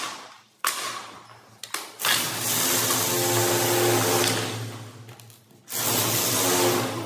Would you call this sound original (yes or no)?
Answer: yes